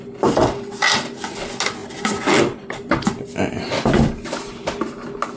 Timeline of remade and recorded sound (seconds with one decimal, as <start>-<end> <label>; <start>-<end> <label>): 0.0-5.4 recorded